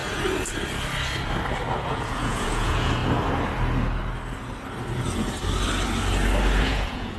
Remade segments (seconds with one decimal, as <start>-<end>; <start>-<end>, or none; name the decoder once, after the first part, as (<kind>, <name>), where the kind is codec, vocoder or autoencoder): 1.9-3.0 (vocoder, Vocos); 6.6-7.2